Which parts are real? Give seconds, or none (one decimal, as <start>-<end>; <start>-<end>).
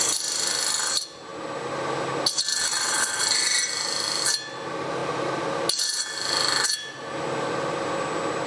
0.0-8.5